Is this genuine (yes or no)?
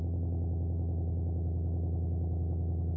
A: yes